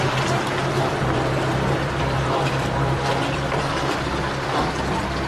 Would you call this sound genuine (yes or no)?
yes